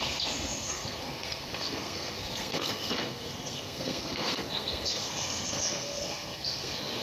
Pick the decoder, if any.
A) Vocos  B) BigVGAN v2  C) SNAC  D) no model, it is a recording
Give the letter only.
C